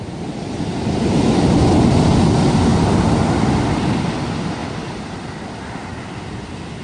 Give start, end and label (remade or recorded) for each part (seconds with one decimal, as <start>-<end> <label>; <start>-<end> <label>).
0.0-6.8 recorded